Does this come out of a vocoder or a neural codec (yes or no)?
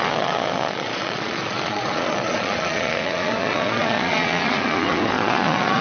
yes